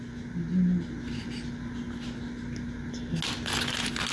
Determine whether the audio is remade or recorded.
recorded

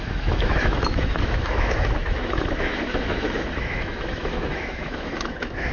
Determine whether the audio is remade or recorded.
remade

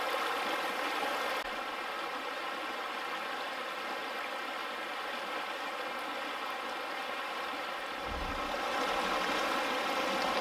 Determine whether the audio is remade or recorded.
recorded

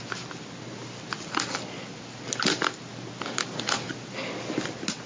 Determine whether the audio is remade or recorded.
recorded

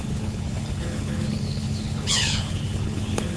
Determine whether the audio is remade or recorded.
remade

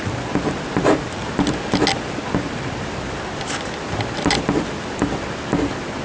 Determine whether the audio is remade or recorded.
recorded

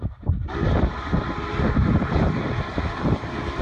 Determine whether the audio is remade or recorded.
recorded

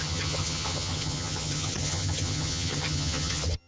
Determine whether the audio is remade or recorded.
remade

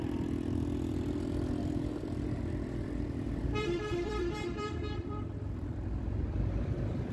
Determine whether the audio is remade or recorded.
remade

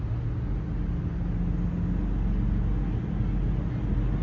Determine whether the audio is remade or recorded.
recorded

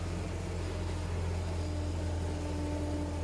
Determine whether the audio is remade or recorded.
recorded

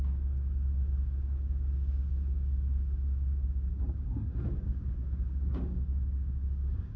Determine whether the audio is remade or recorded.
remade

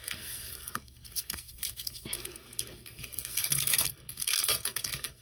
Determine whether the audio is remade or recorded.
remade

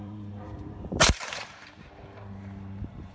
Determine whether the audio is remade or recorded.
remade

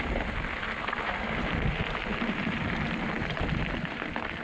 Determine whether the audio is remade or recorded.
recorded